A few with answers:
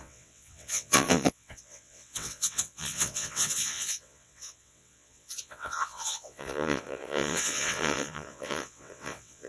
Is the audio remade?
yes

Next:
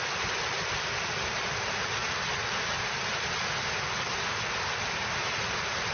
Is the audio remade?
no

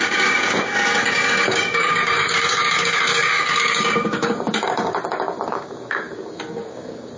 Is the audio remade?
yes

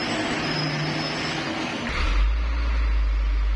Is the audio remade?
no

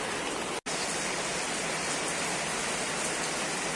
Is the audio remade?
no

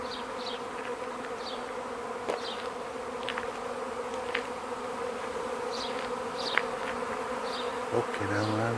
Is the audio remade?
no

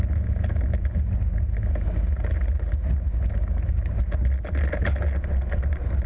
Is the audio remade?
no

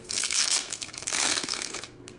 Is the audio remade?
yes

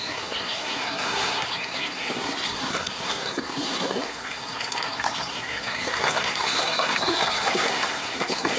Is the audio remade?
yes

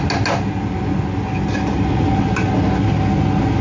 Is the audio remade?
no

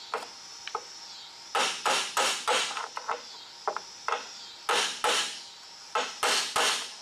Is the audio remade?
no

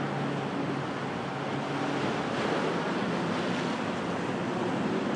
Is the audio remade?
no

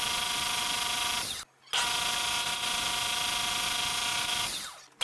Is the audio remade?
no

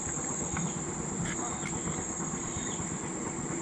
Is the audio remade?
no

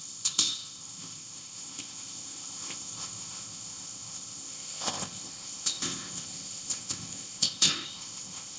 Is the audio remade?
yes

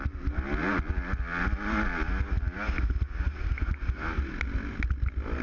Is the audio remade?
no